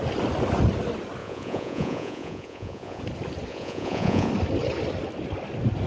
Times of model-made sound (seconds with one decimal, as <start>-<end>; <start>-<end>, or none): 1.2-3.0; 3.5-4.3